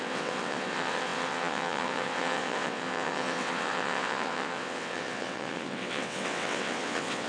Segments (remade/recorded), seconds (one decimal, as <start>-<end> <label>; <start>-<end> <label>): 0.0-7.3 remade